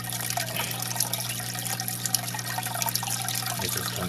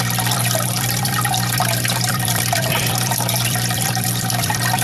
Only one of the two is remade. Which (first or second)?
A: second